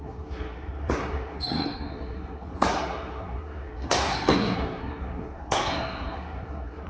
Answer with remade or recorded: remade